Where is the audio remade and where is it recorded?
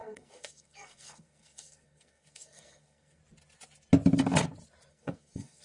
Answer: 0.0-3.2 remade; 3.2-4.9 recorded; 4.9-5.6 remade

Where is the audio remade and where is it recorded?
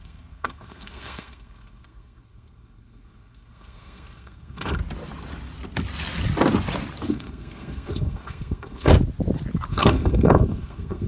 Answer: 0.0-4.8 remade; 4.8-7.1 recorded; 7.1-8.9 remade; 8.9-9.7 recorded; 9.7-11.1 remade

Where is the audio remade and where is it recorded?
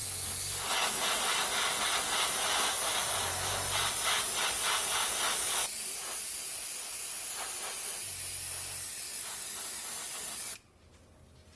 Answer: 0.0-11.6 recorded